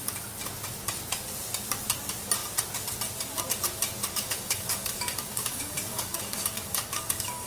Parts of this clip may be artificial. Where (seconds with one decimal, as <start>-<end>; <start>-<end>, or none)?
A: 4.0-7.5